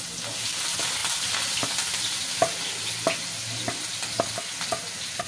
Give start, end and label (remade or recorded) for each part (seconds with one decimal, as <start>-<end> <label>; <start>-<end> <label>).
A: 0.0-5.3 recorded